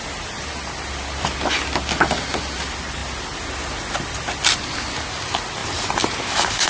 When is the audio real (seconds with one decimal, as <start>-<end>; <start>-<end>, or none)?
0.0-5.6; 6.2-6.7